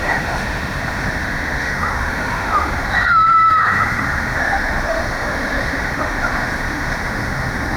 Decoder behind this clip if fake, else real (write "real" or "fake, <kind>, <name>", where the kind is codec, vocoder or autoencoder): fake, autoencoder, DAC-VAE